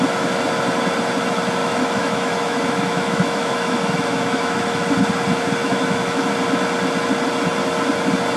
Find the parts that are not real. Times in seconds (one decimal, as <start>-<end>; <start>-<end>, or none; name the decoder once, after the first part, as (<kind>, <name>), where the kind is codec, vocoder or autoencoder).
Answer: 1.6-4.9 (autoencoder, DAC-VAE); 5.6-6.2